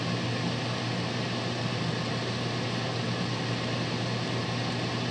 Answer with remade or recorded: recorded